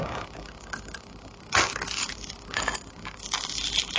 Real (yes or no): yes